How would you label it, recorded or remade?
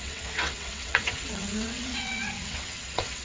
remade